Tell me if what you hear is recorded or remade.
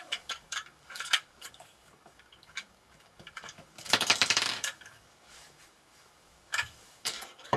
remade